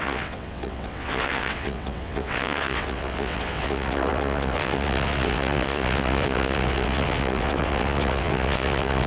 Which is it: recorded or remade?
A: remade